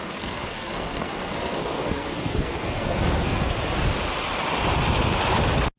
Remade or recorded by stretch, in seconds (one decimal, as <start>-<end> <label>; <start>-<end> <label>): 0.0-3.5 remade; 3.5-5.8 recorded